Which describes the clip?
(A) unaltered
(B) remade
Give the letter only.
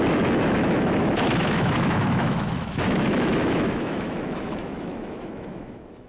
B